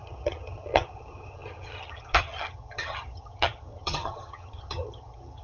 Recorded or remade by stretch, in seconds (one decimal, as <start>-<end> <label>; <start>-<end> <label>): 0.0-5.4 remade